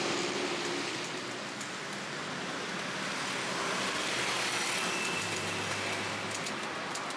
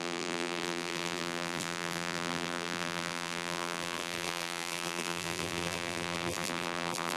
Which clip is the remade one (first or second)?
second